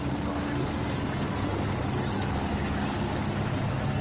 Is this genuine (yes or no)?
yes